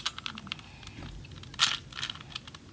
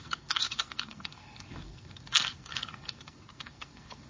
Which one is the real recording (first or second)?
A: first